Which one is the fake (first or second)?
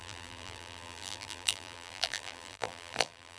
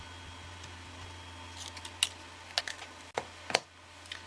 first